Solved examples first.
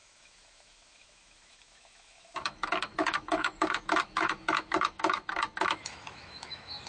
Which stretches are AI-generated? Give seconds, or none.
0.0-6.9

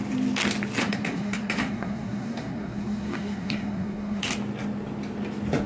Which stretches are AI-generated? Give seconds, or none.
0.8-4.2